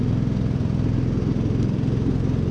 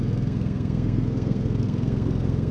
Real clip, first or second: first